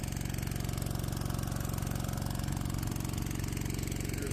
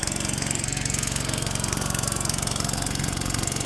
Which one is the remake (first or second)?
second